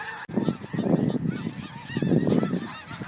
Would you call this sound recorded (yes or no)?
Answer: yes